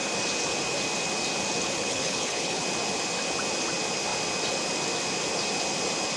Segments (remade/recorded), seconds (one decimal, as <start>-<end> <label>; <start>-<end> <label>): 0.0-1.8 recorded; 1.8-2.6 remade; 2.6-6.2 recorded